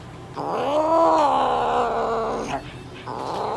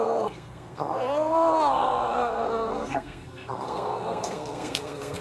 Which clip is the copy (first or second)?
second